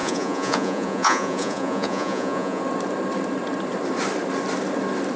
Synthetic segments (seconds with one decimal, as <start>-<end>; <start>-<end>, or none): 0.0-2.6